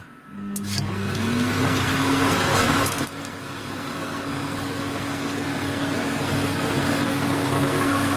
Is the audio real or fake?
fake